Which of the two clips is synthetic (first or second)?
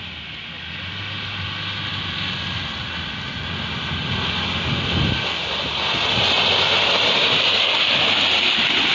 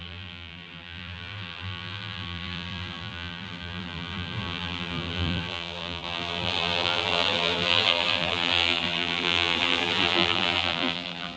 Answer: second